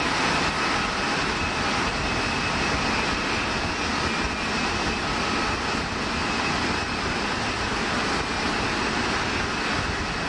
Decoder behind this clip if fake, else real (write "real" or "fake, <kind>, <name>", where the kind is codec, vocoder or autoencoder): real